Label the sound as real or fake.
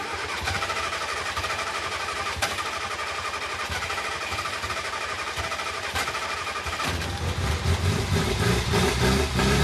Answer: fake